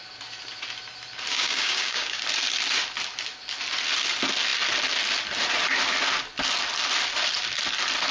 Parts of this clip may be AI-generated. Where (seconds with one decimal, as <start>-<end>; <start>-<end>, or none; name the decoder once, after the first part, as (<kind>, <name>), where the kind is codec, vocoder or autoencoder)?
1.3-2.2 (codec, DAC)